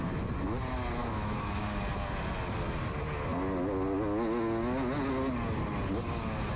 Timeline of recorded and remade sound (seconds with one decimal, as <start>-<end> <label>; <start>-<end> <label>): 0.0-1.0 recorded; 1.0-1.8 remade; 1.8-6.6 recorded